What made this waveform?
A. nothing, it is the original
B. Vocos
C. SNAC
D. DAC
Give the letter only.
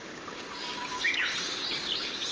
D